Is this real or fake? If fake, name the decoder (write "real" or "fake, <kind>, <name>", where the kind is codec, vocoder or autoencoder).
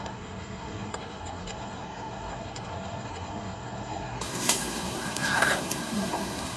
fake, codec, SNAC